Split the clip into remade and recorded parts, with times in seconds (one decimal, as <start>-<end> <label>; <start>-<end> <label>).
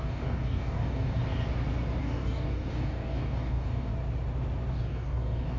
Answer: 0.0-1.2 remade; 1.2-2.0 recorded; 2.0-3.9 remade; 3.9-4.7 recorded; 4.7-5.6 remade